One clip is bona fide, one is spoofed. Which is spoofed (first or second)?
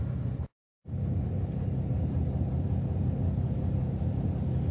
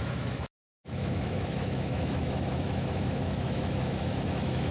second